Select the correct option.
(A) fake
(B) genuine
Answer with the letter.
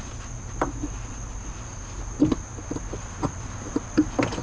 B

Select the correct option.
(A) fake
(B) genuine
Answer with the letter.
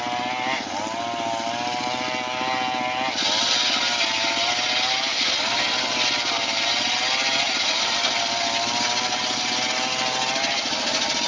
B